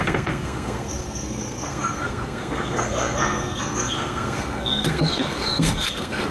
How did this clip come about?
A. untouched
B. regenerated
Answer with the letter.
B